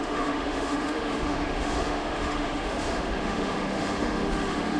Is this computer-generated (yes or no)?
yes